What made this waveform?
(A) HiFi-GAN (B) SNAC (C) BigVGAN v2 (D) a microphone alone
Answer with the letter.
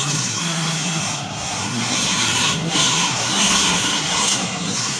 B